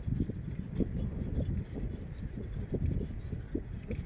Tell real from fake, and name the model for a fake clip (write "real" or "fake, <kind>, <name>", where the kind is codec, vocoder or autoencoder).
real